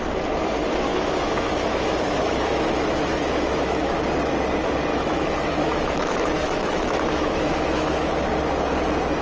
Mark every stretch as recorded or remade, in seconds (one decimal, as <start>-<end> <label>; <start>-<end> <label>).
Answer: 0.0-0.9 recorded; 0.9-4.0 remade; 4.0-4.9 recorded; 4.9-8.1 remade; 8.1-9.2 recorded

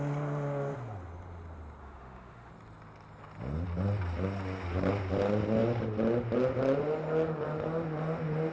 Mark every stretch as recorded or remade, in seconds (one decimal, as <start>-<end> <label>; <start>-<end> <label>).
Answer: 0.0-1.8 recorded; 1.8-2.5 remade; 2.5-8.5 recorded

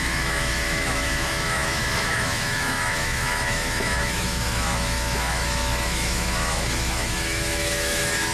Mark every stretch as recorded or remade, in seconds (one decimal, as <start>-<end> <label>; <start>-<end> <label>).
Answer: 0.0-8.3 remade

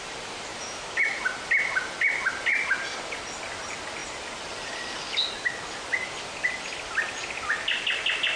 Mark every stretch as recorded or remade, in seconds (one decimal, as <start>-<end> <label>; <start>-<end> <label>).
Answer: 0.0-0.5 recorded; 0.5-1.2 remade; 1.2-8.4 recorded

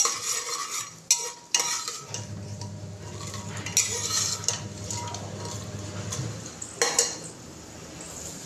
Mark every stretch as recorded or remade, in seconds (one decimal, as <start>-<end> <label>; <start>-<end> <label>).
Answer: 0.0-8.5 recorded

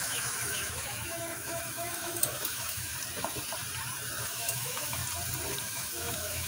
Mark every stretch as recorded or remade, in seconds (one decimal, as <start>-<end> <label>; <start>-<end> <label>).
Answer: 0.0-2.9 remade; 2.9-4.2 recorded; 4.2-5.0 remade; 5.0-5.6 recorded; 5.6-6.5 remade

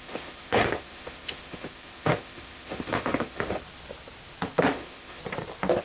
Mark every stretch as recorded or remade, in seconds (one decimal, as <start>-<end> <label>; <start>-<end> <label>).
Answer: 0.0-3.6 remade; 3.6-4.7 recorded; 4.7-5.2 remade; 5.2-5.8 recorded